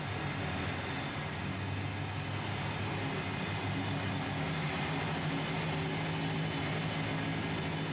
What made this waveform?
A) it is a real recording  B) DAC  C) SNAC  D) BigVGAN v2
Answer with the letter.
A